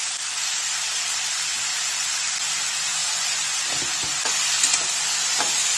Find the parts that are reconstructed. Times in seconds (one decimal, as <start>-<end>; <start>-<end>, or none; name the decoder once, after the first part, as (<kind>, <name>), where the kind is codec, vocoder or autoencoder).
3.0-3.6 (vocoder, Vocos)